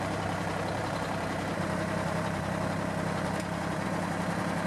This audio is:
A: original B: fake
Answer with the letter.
B